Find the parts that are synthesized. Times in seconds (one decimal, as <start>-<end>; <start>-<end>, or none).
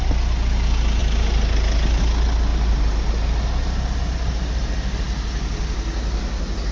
none